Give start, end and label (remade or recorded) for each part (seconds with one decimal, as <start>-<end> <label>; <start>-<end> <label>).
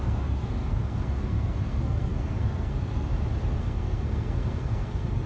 0.0-3.1 remade; 3.1-3.6 recorded; 3.6-5.3 remade